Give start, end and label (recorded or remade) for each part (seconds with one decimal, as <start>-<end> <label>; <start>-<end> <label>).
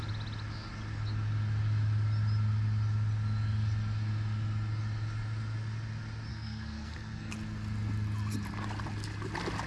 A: 0.0-6.3 recorded; 6.3-7.3 remade; 7.3-9.7 recorded